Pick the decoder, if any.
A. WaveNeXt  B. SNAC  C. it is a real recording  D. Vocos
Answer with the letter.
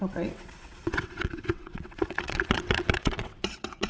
A